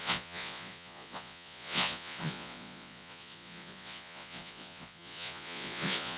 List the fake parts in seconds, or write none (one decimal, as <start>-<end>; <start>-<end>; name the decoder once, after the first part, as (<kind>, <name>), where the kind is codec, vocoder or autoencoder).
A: 0.0-6.2 (vocoder, Vocos)